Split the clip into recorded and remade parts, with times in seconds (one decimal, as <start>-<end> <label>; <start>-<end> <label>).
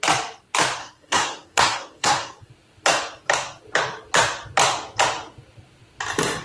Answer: 0.0-0.8 recorded; 0.8-2.5 remade; 2.5-6.4 recorded